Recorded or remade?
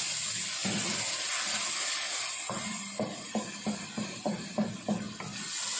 recorded